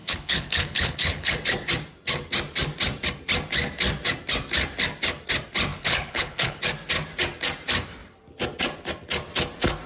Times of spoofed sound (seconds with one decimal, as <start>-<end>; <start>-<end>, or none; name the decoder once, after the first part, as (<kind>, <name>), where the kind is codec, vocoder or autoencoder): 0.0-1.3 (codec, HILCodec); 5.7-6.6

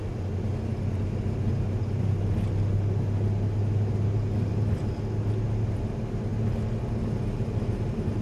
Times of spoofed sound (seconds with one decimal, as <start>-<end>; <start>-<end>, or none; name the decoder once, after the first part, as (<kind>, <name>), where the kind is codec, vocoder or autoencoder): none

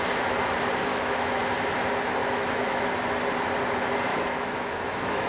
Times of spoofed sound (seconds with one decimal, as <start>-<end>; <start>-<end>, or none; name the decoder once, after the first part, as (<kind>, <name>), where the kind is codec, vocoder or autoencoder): 0.9-1.4 (autoencoder, DAC-VAE); 2.2-2.8; 4.1-5.3

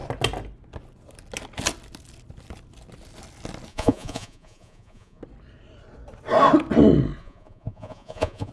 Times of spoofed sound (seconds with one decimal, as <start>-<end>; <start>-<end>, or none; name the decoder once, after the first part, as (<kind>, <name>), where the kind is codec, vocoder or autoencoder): 3.7-5.2 (vocoder, Vocos); 7.2-8.5

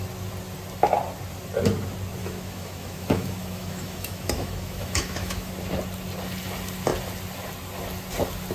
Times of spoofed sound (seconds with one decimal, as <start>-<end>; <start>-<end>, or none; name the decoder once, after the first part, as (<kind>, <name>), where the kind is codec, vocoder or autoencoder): 2.2-5.5 (autoencoder, DAC-VAE)

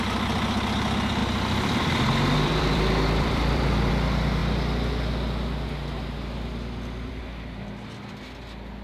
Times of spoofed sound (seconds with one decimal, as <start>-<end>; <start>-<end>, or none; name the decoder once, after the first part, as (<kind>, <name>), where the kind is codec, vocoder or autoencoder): 1.2-3.9 (vocoder, BigVGAN v2)

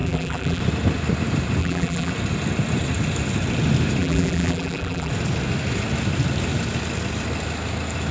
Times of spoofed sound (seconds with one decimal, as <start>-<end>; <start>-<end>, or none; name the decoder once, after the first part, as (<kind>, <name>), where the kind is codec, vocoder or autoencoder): 0.0-0.6 (vocoder, BigVGAN v2); 1.6-2.1; 4.0-5.1

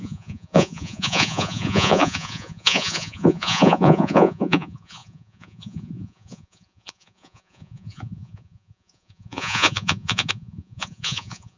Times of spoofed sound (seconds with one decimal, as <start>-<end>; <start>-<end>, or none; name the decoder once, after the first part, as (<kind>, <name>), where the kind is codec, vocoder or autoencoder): 0.0-11.6 (vocoder, Vocos)